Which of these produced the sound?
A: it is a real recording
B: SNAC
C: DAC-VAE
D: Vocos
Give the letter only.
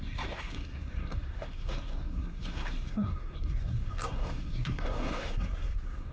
B